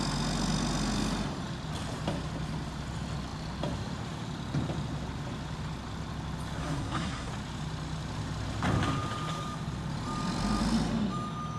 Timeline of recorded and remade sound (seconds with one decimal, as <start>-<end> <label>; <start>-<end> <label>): 0.0-6.6 recorded; 6.6-7.3 remade; 7.3-11.6 recorded